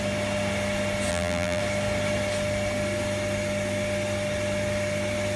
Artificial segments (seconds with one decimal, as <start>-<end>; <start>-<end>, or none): 1.1-1.6